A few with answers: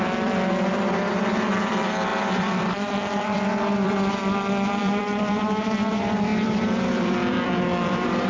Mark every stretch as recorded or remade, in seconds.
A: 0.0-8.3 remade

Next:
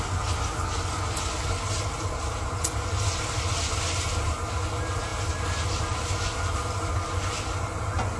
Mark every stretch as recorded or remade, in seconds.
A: 0.0-8.2 recorded

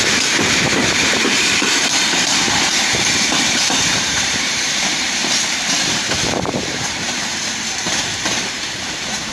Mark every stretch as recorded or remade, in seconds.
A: 0.0-5.2 remade; 5.2-5.7 recorded; 5.7-9.3 remade

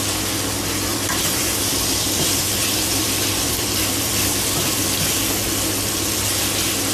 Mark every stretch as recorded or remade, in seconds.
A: 0.0-0.9 recorded; 0.9-5.0 remade; 5.0-6.9 recorded

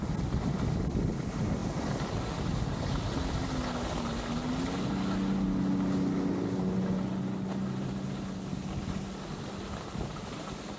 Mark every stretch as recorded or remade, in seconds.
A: 0.0-10.8 recorded

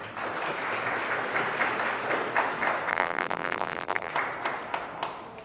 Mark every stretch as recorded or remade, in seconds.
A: 0.0-2.9 recorded; 2.9-4.1 remade; 4.1-5.4 recorded

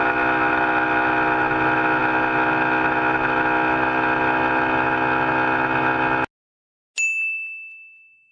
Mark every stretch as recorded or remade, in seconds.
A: 0.0-8.3 recorded